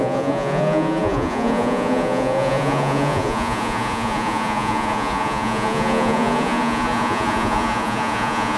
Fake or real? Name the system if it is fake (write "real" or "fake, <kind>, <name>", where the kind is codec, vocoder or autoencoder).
fake, vocoder, Vocos